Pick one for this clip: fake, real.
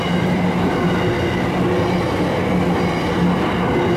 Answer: real